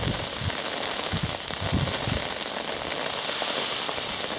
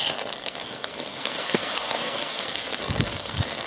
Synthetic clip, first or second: second